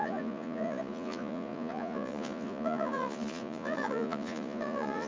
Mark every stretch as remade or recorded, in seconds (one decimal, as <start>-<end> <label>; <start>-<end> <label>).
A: 0.0-5.1 remade